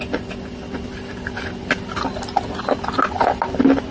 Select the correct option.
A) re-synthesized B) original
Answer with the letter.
B